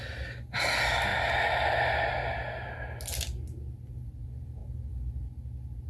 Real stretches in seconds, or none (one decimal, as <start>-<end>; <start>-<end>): 0.0-5.9